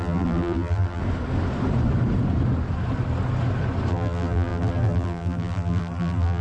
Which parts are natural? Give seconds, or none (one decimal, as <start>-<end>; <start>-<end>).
1.0-3.9